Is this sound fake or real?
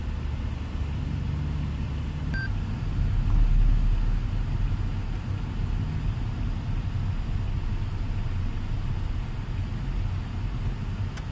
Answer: real